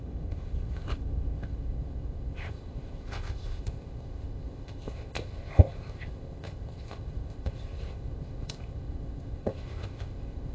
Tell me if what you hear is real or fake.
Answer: fake